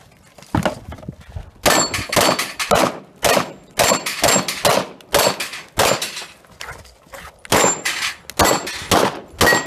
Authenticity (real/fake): real